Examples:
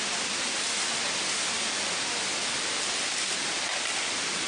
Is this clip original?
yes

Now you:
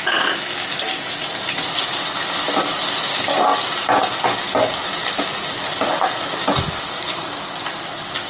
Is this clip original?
yes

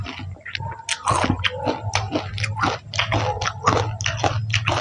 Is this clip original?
yes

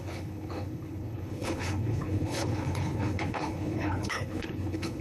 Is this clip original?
no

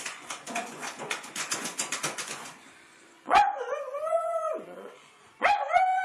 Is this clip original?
no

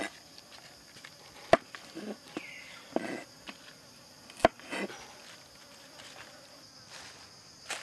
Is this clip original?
yes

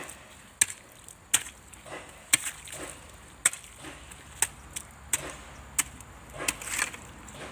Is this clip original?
yes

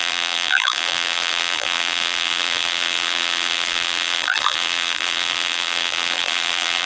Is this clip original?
no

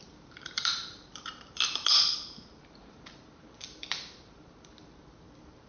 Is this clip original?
no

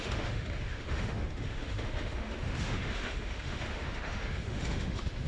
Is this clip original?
no